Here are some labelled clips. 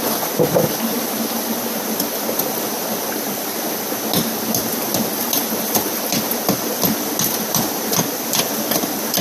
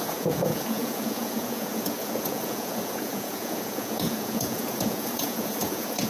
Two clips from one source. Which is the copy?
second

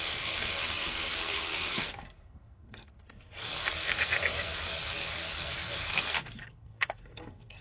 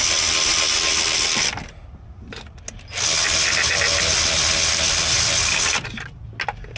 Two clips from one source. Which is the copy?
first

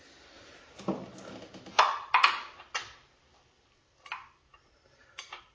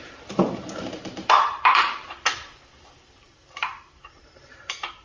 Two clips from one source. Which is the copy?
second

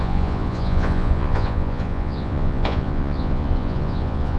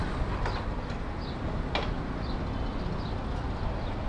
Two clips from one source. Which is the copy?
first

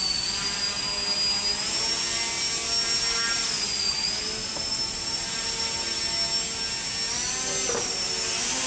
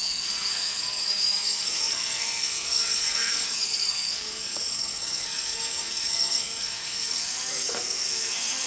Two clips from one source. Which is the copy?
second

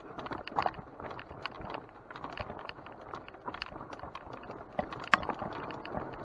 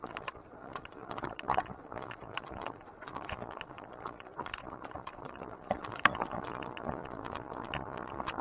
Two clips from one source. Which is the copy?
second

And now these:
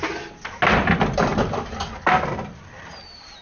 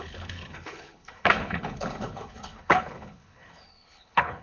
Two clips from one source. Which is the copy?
second